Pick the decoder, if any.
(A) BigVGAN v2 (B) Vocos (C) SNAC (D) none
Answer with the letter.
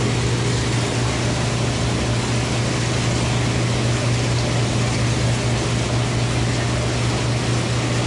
D